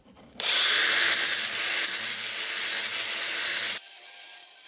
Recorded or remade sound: remade